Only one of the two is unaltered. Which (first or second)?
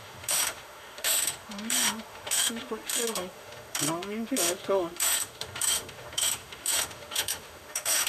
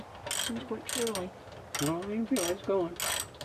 second